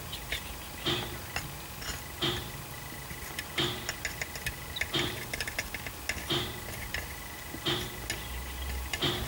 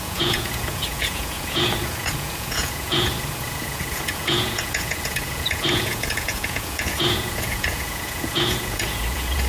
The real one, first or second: first